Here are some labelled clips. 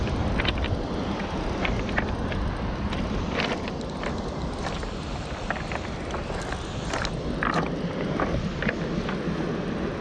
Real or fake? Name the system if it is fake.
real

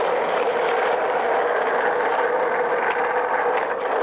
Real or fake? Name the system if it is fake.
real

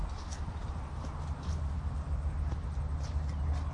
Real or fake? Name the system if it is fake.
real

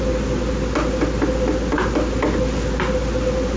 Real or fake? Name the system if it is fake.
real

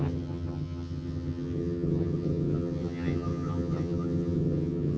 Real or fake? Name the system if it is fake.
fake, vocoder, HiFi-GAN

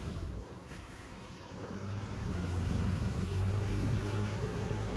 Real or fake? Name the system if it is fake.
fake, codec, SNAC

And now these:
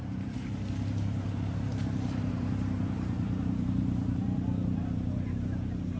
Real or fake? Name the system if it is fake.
fake, vocoder, BigVGAN v2